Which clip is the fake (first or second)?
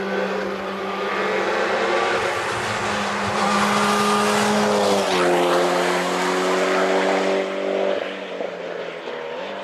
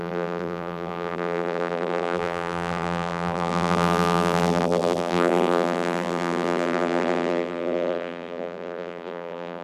second